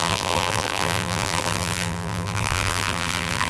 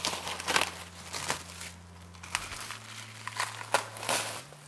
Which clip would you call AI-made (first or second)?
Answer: first